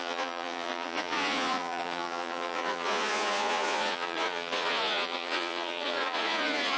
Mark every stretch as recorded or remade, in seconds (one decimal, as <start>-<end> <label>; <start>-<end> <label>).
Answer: 0.0-6.8 remade